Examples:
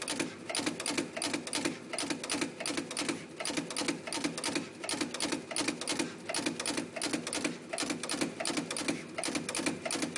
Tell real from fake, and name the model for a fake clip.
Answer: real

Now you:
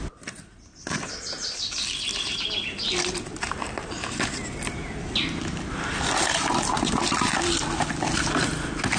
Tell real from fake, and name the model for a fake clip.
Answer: real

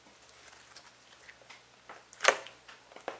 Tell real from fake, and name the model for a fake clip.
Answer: real